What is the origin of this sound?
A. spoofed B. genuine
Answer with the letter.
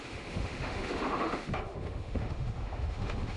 A